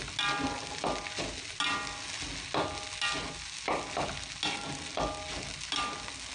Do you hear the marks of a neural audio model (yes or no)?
no